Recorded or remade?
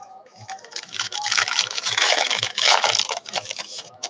remade